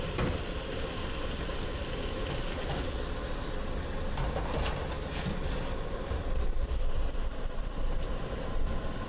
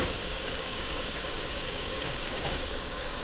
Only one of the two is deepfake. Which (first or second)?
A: second